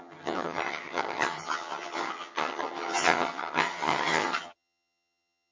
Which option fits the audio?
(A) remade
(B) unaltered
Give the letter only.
A